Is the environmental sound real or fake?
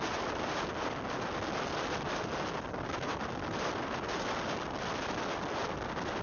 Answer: real